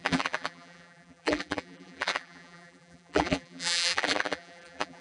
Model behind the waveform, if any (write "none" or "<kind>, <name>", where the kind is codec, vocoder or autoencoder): vocoder, BigVGAN v2